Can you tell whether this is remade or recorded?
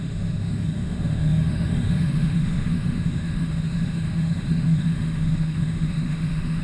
remade